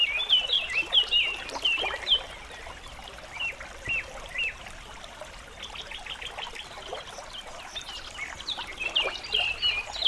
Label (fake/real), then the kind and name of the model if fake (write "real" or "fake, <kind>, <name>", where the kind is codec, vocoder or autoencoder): real